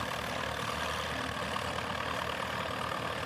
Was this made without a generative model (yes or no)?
yes